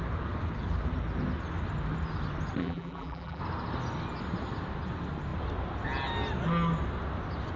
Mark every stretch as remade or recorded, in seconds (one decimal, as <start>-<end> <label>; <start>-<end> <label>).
0.0-2.6 recorded; 2.6-3.4 remade; 3.4-7.6 recorded